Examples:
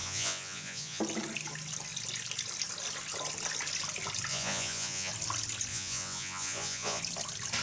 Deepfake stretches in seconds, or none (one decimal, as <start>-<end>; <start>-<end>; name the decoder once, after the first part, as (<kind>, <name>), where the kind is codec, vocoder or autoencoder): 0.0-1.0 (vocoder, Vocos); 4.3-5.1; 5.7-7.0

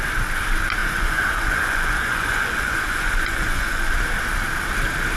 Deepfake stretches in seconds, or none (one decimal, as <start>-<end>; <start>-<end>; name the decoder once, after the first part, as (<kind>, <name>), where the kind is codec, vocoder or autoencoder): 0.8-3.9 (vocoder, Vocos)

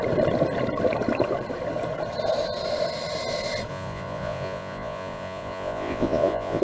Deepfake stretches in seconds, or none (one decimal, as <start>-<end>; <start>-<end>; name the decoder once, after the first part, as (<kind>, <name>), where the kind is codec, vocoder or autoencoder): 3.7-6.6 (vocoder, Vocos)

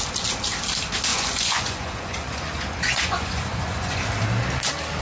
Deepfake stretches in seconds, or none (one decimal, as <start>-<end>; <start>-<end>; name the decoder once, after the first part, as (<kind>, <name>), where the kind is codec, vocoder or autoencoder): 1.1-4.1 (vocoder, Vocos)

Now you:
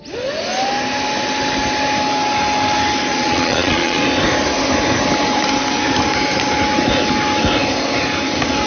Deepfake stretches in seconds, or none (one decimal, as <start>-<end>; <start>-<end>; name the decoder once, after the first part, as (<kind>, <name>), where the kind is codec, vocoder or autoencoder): 3.1-4.0 (vocoder, Vocos)

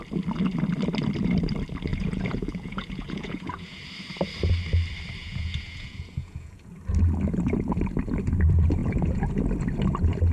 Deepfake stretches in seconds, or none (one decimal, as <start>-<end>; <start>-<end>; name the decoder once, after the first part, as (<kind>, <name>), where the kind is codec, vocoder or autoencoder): 1.9-3.8 (vocoder, Vocos); 5.2-6.7; 8.8-9.3

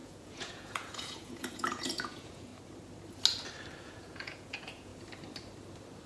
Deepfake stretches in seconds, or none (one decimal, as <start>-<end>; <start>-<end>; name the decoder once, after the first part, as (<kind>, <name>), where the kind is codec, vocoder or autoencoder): 0.0-2.5 (vocoder, Vocos); 3.8-4.9